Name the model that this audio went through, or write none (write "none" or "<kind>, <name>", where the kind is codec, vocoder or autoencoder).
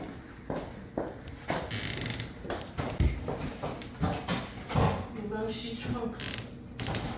none